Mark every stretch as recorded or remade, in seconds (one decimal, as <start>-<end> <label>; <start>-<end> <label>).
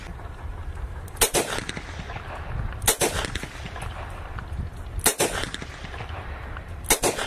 0.0-7.3 recorded